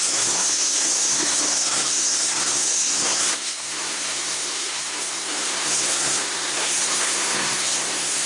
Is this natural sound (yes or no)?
no